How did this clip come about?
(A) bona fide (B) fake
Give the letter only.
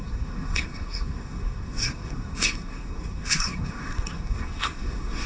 B